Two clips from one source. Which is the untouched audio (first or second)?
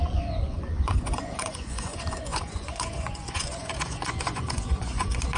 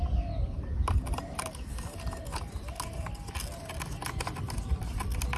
second